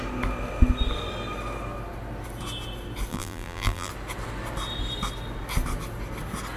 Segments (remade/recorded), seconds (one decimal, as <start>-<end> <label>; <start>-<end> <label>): 0.0-3.1 recorded; 3.1-3.9 remade; 3.9-6.6 recorded

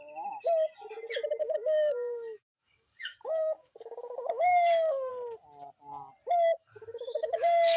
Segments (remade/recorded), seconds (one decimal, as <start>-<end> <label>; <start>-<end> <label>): 0.0-1.4 recorded; 1.4-5.1 remade; 5.1-6.6 recorded; 6.6-7.8 remade

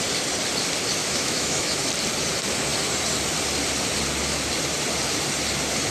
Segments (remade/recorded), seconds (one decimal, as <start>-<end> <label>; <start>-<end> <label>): 0.0-1.0 recorded; 1.0-1.9 remade; 1.9-5.9 recorded

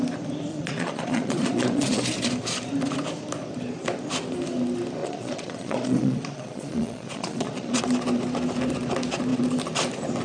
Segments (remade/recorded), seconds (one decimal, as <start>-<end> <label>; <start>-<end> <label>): 0.0-0.5 recorded; 0.5-2.0 remade; 2.0-5.0 recorded; 5.0-7.8 remade; 7.8-10.2 recorded

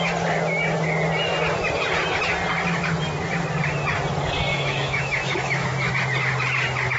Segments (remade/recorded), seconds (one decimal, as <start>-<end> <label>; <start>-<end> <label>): 0.0-4.5 recorded; 4.5-5.9 remade; 5.9-7.0 recorded